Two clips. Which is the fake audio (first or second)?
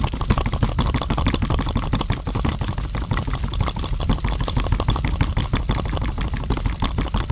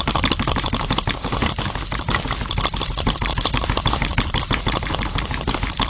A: first